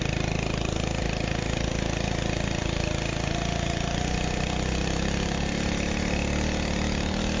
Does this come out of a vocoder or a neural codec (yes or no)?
no